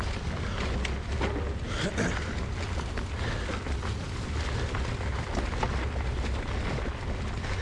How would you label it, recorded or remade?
recorded